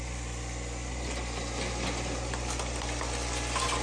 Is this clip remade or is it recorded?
recorded